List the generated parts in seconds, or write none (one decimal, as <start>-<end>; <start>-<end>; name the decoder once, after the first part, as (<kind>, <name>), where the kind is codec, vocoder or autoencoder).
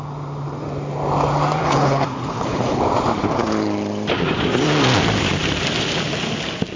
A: 1.6-2.8 (codec, HILCodec)